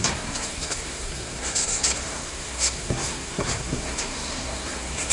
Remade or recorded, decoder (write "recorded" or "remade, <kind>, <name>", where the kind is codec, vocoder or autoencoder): remade, codec, SNAC